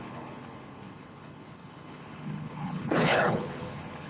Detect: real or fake fake